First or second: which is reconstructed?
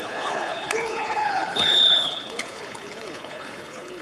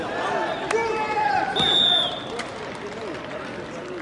first